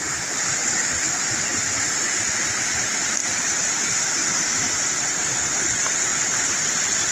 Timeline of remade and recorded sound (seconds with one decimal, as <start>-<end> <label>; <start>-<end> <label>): 0.0-3.2 recorded; 3.2-4.0 remade; 4.0-7.1 recorded